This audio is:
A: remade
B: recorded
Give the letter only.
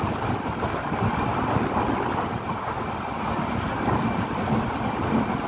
B